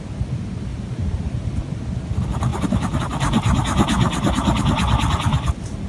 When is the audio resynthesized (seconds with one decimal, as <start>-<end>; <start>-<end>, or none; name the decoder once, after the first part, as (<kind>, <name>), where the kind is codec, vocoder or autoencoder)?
0.7-1.5 (vocoder, BigVGAN v2); 2.5-3.0; 5.3-5.9